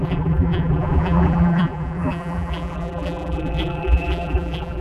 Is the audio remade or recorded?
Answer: remade